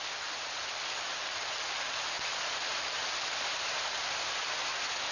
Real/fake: real